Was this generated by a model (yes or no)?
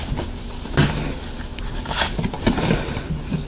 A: no